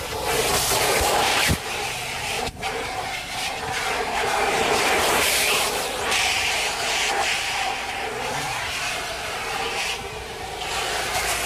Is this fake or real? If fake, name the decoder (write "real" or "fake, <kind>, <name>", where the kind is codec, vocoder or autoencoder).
fake, vocoder, BigVGAN v2